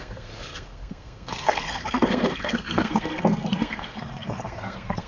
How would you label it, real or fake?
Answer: fake